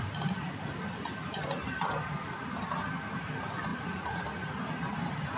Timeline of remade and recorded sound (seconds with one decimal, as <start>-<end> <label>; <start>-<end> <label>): 0.0-3.7 recorded; 3.7-4.2 remade; 4.2-5.4 recorded